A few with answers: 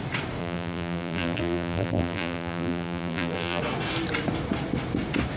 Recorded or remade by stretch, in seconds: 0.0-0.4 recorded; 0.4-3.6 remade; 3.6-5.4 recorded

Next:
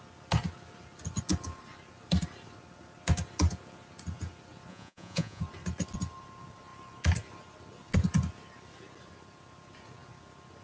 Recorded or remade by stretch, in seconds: 0.0-4.7 recorded; 4.7-5.4 remade; 5.4-10.6 recorded

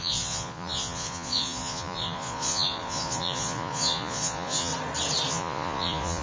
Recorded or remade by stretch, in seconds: 0.0-4.7 remade; 4.7-5.3 recorded; 5.3-6.2 remade

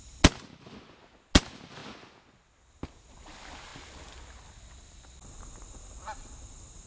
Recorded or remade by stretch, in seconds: 0.0-6.9 recorded